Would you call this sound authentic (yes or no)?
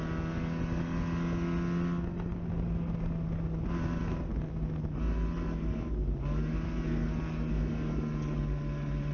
yes